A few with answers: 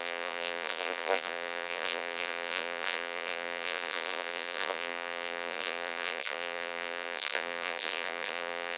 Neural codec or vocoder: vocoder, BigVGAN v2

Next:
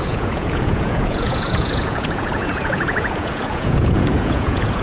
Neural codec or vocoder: vocoder, Vocos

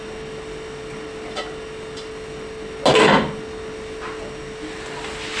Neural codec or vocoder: none